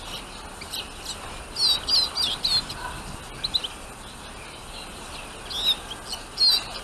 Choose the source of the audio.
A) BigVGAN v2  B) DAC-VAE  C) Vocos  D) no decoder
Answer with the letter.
D